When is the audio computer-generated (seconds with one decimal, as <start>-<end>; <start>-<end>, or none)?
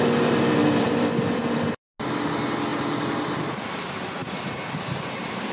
0.6-1.8; 2.7-3.7